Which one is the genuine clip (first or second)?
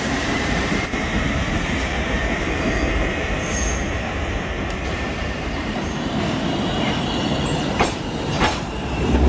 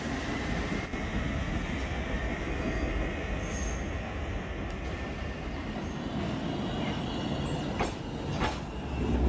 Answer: second